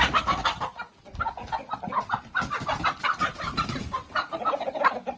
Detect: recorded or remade recorded